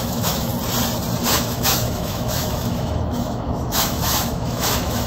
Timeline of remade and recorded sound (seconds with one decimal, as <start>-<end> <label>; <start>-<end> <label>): 0.0-0.5 remade; 0.5-1.3 recorded; 1.3-5.1 remade